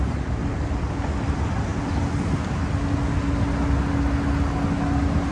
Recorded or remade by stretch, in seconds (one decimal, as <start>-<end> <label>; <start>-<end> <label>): 0.0-5.3 recorded